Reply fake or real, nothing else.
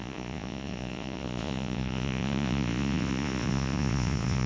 fake